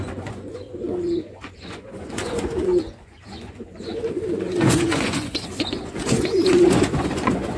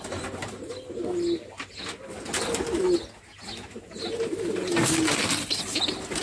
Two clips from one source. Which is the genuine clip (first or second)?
second